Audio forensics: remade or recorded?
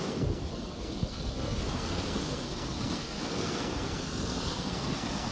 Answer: remade